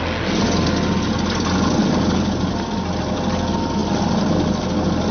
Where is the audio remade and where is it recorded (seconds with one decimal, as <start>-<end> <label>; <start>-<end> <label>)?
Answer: 0.0-5.1 recorded